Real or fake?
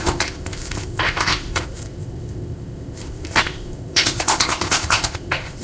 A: fake